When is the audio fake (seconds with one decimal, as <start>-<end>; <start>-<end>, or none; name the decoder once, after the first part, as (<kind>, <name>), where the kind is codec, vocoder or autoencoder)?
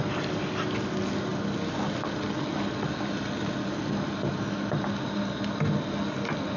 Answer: none